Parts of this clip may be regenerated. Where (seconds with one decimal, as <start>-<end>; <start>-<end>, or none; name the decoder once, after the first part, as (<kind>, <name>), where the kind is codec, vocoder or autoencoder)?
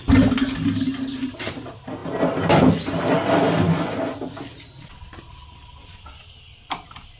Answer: none